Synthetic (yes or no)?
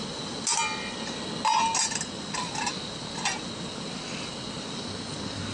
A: no